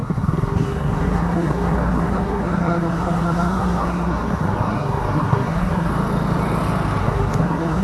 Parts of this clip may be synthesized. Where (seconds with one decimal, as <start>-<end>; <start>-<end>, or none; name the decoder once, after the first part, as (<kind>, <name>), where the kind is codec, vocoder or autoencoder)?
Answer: 0.0-5.9 (codec, SNAC); 7.0-7.8